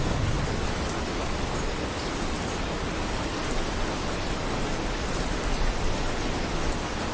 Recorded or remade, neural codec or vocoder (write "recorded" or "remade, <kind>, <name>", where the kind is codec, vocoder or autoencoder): recorded